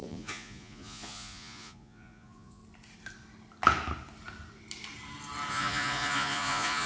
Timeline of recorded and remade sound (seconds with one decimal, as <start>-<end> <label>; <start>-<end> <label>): 0.0-2.6 remade; 2.6-5.5 recorded; 5.5-6.9 remade

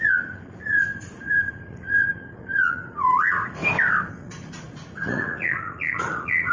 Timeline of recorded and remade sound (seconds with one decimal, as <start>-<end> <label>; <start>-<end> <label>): 0.0-3.6 remade; 3.6-4.1 recorded; 4.1-6.5 remade

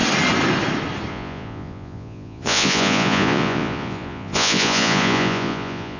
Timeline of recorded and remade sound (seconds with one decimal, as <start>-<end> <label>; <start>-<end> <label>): 0.0-1.1 recorded; 1.1-6.0 remade

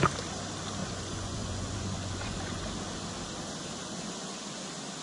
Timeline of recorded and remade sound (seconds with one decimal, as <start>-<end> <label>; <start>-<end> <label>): 0.0-0.8 recorded; 0.8-2.6 remade; 2.6-3.8 recorded; 3.8-4.6 remade; 4.6-5.0 recorded

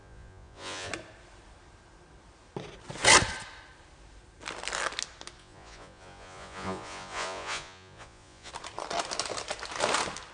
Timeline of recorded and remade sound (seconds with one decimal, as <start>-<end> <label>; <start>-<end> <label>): 0.0-0.9 remade; 0.9-5.4 recorded; 5.4-8.5 remade; 8.5-10.3 recorded